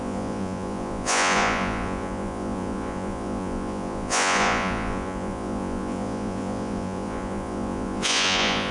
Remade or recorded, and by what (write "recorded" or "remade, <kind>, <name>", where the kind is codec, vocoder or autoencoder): remade, vocoder, Vocos